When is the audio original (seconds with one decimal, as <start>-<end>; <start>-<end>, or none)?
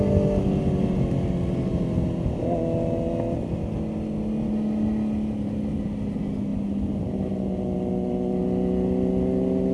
0.0-9.7